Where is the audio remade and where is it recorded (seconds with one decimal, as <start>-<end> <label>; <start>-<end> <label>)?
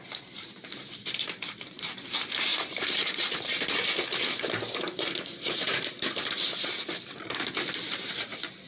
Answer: 0.0-8.7 remade